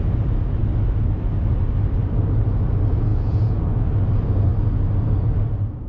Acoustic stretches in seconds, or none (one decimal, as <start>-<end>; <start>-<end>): 0.0-3.1; 3.7-5.9